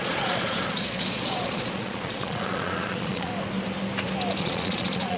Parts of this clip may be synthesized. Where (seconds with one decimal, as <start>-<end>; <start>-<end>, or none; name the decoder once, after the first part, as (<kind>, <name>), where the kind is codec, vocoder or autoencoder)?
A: 0.0-3.3 (vocoder, Vocos); 4.4-5.2